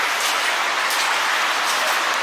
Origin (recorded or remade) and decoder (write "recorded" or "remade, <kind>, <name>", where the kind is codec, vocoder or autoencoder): recorded